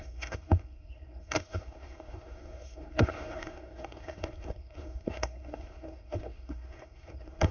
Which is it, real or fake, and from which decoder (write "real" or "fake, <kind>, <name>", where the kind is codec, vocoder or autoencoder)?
fake, codec, SNAC